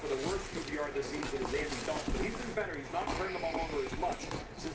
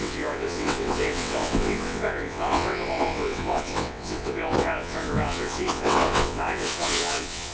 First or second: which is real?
first